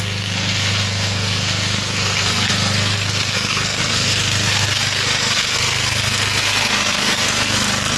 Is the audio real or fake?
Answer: fake